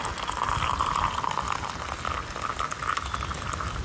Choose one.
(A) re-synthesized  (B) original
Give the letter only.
B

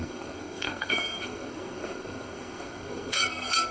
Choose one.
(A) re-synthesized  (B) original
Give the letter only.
A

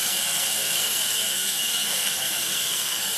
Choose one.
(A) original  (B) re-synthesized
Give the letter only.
B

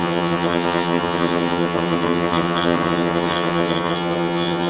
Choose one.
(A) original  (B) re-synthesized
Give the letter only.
B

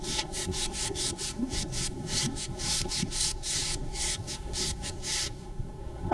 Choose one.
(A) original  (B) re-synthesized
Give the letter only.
B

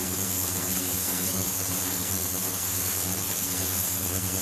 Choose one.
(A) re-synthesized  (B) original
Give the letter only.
A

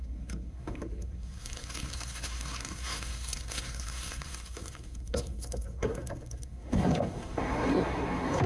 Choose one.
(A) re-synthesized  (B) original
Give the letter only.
A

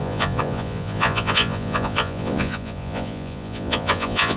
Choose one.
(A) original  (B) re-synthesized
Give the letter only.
B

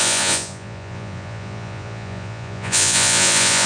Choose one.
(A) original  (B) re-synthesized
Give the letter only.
B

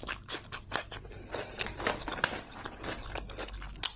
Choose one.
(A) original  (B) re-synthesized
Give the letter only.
A